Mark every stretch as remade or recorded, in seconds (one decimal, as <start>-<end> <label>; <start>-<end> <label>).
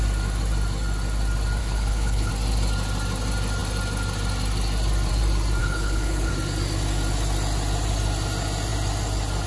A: 0.0-1.6 recorded; 1.6-2.3 remade; 2.3-5.6 recorded; 5.6-6.3 remade; 6.3-9.5 recorded